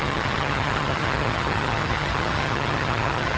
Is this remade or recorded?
remade